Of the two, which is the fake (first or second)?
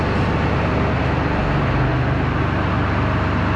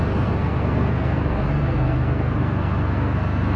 second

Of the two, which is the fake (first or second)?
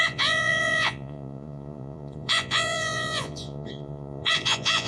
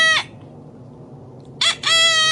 first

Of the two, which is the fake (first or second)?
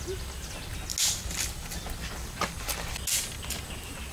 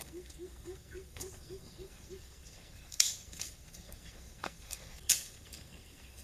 second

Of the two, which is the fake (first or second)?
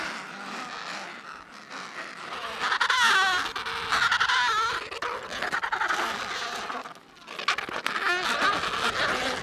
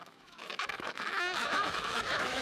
second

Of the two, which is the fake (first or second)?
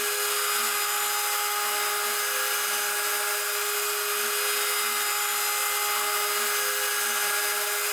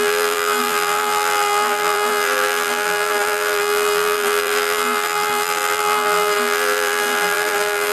second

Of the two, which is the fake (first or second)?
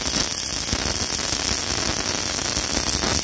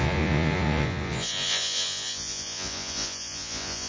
second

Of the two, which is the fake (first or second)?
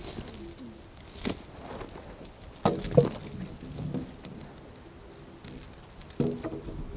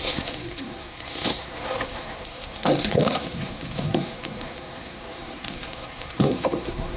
second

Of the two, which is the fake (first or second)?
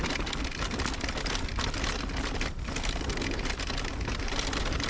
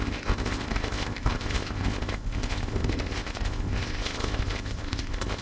second